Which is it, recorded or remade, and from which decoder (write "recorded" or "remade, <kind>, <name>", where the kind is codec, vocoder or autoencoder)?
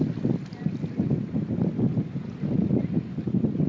recorded